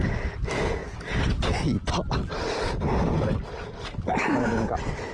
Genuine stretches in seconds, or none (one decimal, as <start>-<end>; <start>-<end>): 0.0-5.1